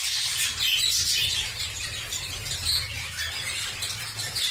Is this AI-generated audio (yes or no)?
yes